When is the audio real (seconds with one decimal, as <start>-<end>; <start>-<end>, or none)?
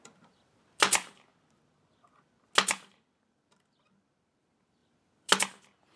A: 1.3-2.9